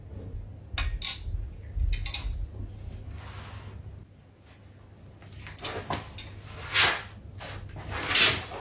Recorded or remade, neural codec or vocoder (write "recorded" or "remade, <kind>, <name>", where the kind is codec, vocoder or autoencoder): recorded